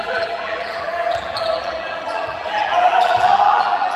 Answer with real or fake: fake